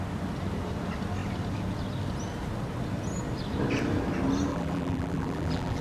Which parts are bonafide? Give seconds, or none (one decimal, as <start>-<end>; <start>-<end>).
0.0-4.5